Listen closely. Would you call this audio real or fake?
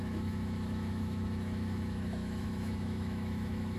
fake